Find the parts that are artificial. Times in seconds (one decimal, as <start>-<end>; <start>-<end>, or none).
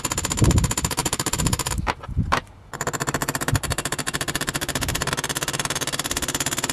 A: 1.0-2.6; 3.2-5.1